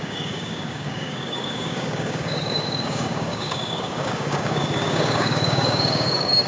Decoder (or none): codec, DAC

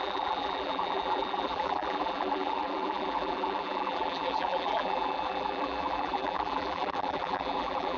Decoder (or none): vocoder, BigVGAN v2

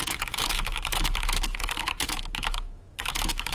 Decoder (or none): autoencoder, DAC-VAE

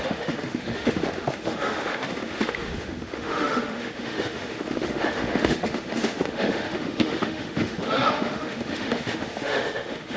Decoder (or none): autoencoder, DAC-VAE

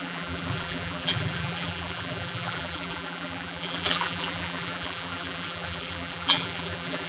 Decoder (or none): vocoder, BigVGAN v2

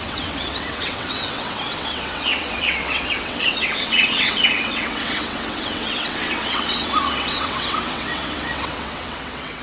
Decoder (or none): vocoder, WaveNeXt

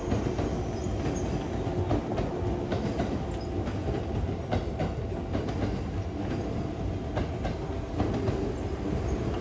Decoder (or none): none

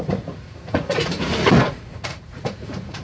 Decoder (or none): vocoder, Vocos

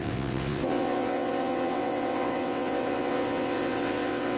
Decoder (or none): vocoder, WaveNeXt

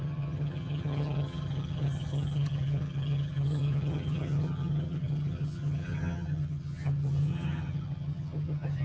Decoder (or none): vocoder, HiFi-GAN